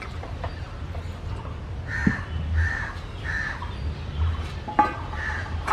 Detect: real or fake real